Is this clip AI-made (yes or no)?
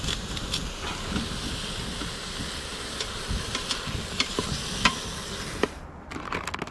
no